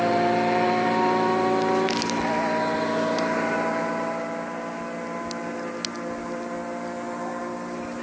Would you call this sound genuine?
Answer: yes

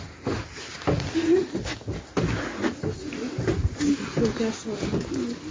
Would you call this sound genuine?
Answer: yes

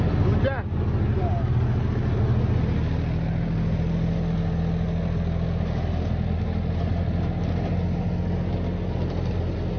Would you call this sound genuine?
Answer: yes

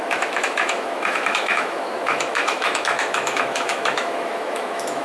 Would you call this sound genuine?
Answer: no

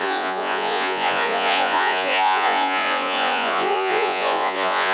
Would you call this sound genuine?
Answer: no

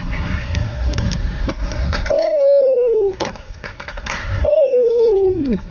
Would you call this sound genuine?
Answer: no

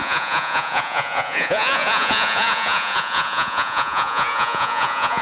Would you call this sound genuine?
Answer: no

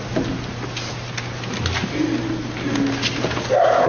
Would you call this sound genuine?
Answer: yes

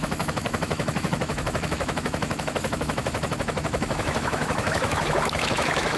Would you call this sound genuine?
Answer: no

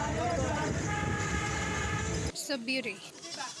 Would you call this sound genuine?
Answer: yes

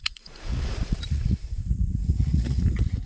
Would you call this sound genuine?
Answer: no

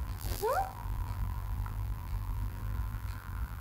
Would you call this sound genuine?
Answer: no